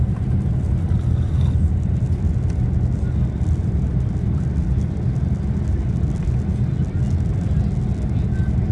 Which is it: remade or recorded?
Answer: recorded